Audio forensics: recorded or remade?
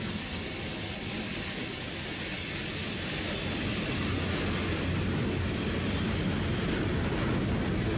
recorded